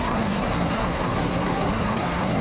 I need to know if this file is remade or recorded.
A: remade